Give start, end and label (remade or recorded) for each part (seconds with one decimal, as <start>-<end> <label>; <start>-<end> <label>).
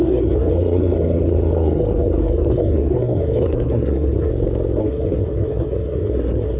0.0-4.3 remade; 4.3-4.8 recorded; 4.8-6.6 remade